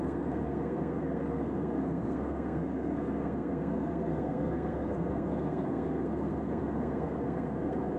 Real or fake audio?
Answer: fake